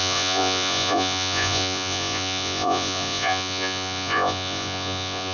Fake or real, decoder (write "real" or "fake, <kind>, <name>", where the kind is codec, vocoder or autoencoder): fake, vocoder, Vocos